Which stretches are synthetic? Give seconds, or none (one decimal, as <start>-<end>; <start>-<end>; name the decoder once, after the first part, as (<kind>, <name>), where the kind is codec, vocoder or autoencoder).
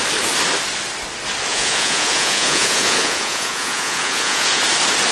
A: 1.5-4.6 (vocoder, Vocos)